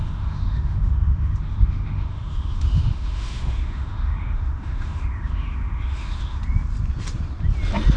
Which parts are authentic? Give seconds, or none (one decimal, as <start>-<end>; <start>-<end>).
6.4-8.0